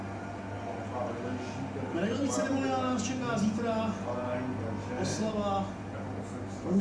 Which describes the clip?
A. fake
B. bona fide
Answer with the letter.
B